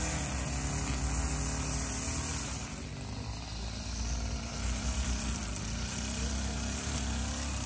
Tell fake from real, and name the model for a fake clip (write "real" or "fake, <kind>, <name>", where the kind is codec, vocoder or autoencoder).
real